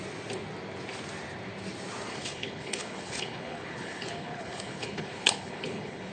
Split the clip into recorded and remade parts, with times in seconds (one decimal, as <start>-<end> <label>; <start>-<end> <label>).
0.0-2.1 recorded; 2.1-6.1 remade